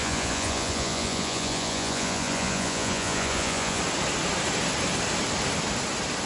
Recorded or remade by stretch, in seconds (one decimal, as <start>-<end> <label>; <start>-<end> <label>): 0.0-3.8 remade; 3.8-6.3 recorded